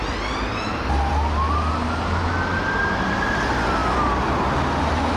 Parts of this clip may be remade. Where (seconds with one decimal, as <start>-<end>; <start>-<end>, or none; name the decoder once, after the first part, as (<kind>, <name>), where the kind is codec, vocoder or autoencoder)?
none